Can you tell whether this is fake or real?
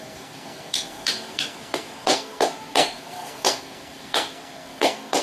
fake